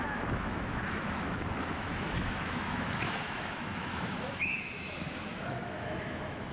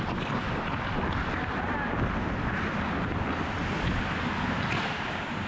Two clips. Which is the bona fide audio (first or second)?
second